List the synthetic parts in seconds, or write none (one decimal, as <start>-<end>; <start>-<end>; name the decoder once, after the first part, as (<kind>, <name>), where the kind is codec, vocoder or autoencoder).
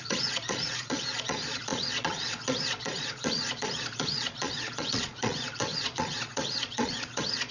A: 0.0-7.5 (vocoder, Vocos)